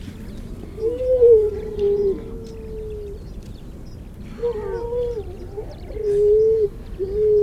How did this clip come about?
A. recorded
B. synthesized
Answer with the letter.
A